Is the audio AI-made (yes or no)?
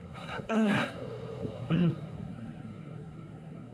yes